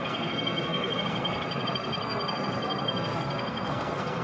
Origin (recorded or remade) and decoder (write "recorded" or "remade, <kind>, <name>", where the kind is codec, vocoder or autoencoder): remade, codec, SNAC